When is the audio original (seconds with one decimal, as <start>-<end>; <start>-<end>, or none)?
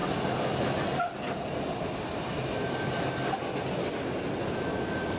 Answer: 0.0-5.2